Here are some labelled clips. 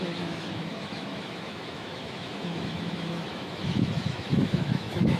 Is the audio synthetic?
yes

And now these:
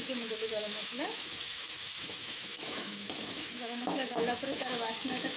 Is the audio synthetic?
yes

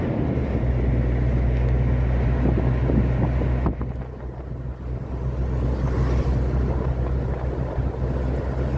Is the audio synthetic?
no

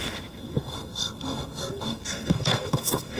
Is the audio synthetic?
yes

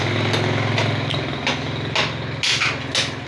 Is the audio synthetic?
no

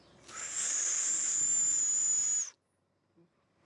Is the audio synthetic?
no